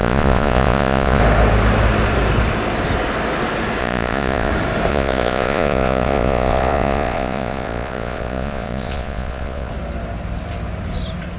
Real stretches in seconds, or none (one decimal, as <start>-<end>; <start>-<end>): 1.2-3.8; 4.5-4.9; 9.7-11.4